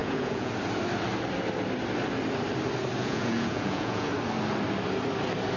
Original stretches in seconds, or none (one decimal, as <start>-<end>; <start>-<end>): 0.5-3.0; 4.1-5.6